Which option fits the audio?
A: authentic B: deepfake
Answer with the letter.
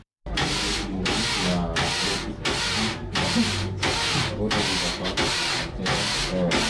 A